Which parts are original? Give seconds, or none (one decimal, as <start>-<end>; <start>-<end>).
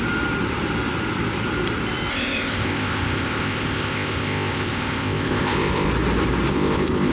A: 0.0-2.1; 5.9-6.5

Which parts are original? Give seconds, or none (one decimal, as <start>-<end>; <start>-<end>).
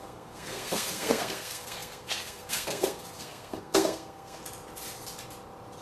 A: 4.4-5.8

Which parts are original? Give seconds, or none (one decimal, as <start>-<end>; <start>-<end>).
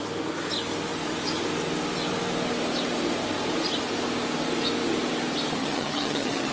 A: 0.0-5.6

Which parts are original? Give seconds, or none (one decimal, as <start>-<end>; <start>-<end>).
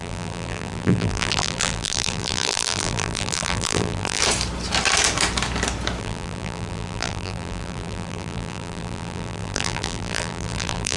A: 4.2-6.0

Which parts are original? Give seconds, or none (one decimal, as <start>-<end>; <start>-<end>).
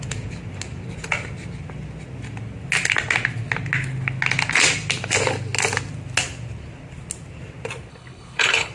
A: 0.0-7.9